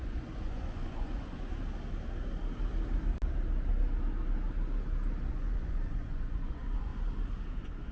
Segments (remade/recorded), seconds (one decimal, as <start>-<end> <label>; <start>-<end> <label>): 0.0-1.5 remade; 1.5-5.3 recorded; 5.3-6.9 remade; 6.9-7.5 recorded; 7.5-7.9 remade